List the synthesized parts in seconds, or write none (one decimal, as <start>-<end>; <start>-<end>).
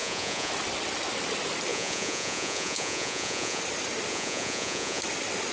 0.0-0.5; 1.7-3.6; 4.1-5.0